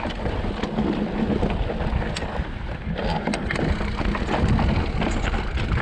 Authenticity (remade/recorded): recorded